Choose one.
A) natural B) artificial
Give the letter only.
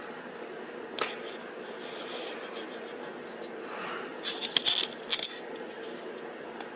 A